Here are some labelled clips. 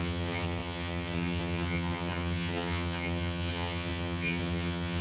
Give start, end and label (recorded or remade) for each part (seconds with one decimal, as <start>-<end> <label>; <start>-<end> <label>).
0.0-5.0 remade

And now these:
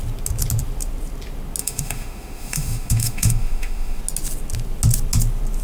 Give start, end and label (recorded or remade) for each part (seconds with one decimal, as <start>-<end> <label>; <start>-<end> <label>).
0.0-1.6 recorded; 1.6-4.0 remade; 4.0-5.6 recorded

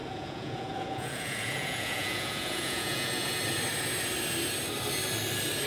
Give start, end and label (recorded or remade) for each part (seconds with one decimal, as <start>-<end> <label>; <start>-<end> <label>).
0.0-3.4 remade; 3.4-5.7 recorded

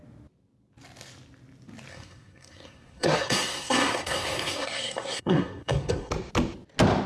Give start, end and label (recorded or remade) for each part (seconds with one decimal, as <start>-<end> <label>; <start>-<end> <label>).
0.0-1.9 recorded; 1.9-6.1 remade; 6.1-7.1 recorded

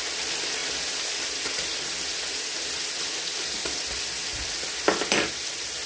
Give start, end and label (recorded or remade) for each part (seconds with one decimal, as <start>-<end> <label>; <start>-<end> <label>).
0.0-5.9 recorded

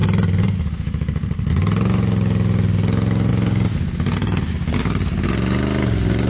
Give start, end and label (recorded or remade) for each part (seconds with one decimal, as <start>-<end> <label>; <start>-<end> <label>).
0.0-1.5 remade; 1.5-3.3 recorded; 3.3-4.8 remade; 4.8-6.3 recorded